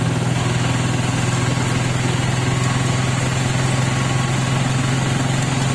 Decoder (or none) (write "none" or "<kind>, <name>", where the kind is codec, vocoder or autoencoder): none